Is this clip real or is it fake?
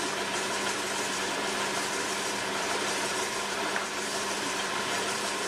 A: fake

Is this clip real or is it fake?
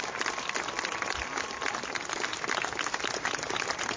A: real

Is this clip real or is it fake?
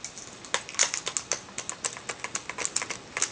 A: real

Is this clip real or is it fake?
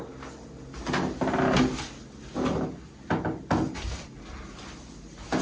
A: real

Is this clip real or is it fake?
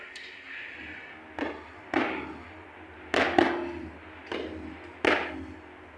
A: real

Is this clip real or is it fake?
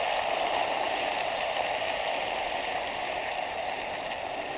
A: real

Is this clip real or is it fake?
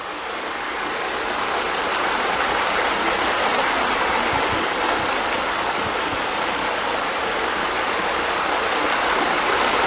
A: real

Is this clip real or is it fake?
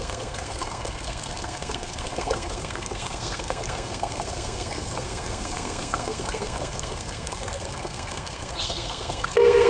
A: fake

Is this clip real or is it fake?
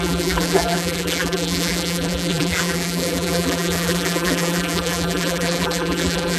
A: fake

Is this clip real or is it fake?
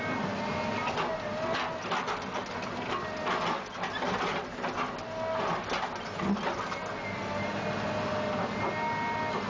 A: real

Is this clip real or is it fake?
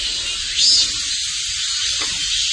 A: real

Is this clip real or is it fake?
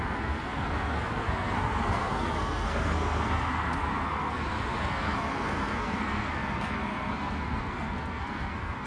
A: fake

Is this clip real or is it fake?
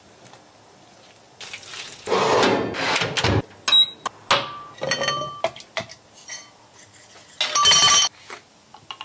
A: real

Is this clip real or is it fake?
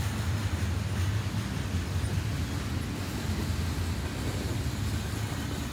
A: real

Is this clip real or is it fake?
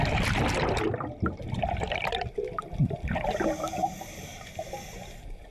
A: fake